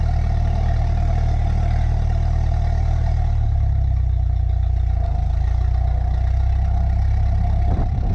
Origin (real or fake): real